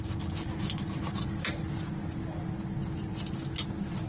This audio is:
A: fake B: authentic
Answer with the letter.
B